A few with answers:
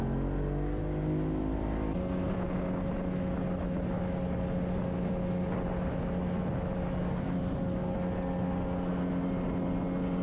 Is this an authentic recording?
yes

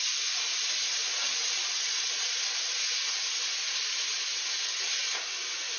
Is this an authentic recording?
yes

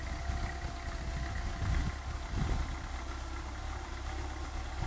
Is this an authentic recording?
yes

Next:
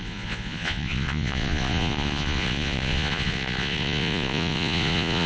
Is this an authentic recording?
no